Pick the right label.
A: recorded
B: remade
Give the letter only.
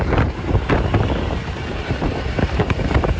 B